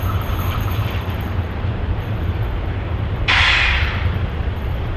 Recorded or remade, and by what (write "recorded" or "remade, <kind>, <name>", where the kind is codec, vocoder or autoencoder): remade, vocoder, BigVGAN v2